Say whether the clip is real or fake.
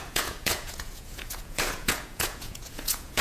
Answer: fake